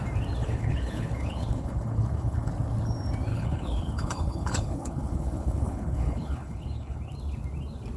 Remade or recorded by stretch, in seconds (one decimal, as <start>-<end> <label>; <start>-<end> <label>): 0.0-0.4 recorded; 0.4-2.5 remade; 2.5-3.3 recorded; 3.3-7.0 remade; 7.0-8.0 recorded